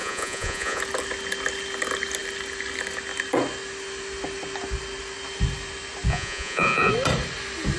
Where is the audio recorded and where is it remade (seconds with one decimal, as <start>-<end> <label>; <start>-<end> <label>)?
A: 0.0-0.8 remade; 0.8-6.1 recorded; 6.1-6.9 remade; 6.9-7.8 recorded